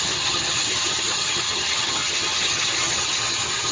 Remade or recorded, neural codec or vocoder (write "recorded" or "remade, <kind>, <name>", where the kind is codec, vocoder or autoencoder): remade, vocoder, HiFi-GAN